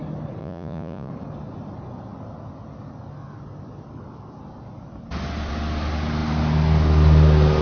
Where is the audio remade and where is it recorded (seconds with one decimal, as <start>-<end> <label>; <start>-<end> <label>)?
0.0-0.4 recorded; 0.4-1.1 remade; 1.1-7.6 recorded